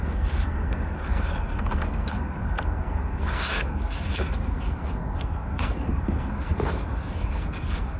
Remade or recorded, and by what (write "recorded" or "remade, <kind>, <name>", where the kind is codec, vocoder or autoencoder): remade, codec, SNAC